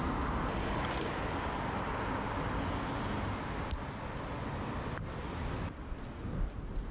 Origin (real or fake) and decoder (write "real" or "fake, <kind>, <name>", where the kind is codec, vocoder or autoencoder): real